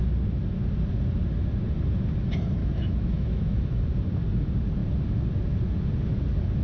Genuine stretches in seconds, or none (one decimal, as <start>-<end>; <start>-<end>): 0.0-2.6; 3.8-6.6